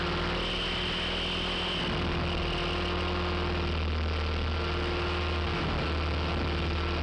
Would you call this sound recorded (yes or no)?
yes